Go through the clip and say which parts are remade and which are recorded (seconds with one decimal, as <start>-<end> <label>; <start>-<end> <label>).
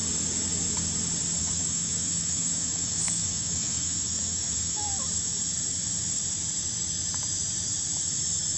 0.0-1.4 recorded; 1.4-4.9 remade; 4.9-8.6 recorded